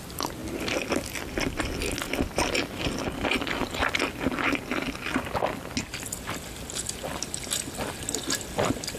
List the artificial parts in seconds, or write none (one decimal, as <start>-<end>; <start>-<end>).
none